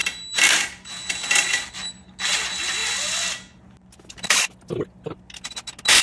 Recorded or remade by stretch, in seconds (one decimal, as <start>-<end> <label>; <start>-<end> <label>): 0.0-6.0 recorded